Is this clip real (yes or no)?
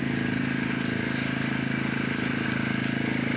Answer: yes